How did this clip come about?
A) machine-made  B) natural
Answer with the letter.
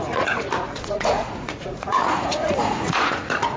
A